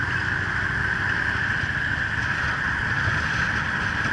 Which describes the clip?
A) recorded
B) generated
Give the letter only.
A